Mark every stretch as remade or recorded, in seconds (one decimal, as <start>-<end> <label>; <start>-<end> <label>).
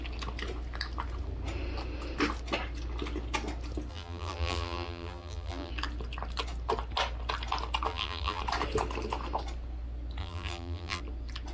0.0-3.9 recorded; 3.9-5.7 remade; 5.7-7.9 recorded; 7.9-8.4 remade; 8.4-10.2 recorded; 10.2-11.0 remade; 11.0-11.5 recorded